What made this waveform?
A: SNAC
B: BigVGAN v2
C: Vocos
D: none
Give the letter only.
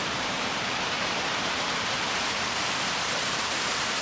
B